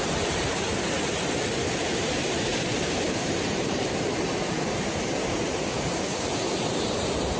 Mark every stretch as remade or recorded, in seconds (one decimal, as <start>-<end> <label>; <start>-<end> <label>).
0.0-0.7 remade; 0.7-2.0 recorded; 2.0-7.4 remade